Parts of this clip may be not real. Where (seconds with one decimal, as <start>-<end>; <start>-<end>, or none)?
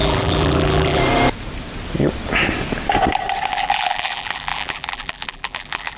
0.0-1.0; 3.5-6.0